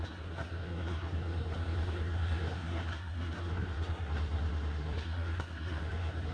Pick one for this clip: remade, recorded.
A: remade